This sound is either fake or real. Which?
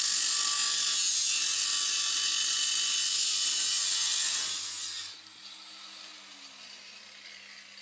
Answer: real